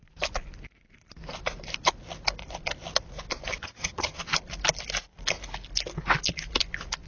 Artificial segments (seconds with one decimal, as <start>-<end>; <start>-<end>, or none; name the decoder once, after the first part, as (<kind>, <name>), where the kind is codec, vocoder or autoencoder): 3.6-4.2 (vocoder, HiFi-GAN)